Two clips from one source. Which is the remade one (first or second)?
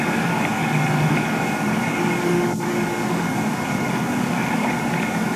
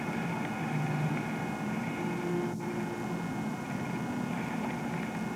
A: first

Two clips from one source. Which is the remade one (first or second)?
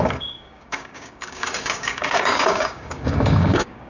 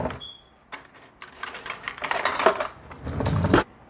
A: first